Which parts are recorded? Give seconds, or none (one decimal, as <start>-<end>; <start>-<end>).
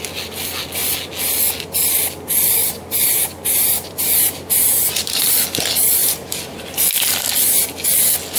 0.0-2.6; 5.2-8.4